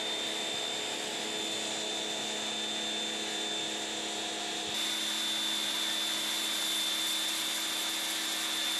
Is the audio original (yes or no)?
yes